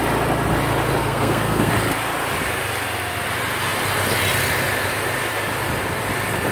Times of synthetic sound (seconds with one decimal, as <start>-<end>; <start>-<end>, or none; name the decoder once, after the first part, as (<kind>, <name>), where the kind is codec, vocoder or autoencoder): 1.0-1.7 (codec, SNAC)